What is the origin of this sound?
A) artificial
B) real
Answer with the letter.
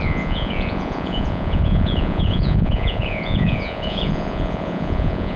A